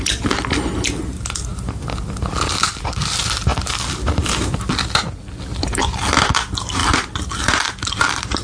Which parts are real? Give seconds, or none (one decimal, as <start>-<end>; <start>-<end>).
0.0-8.4